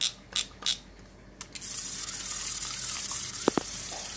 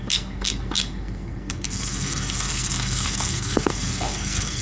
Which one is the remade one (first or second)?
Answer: second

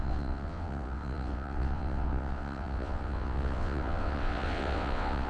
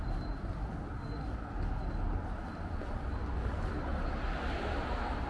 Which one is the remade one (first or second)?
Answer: first